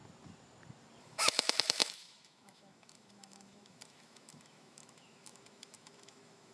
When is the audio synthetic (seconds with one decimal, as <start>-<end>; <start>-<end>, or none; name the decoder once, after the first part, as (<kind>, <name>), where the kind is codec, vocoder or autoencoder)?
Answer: 1.0-6.5 (autoencoder, DAC-VAE)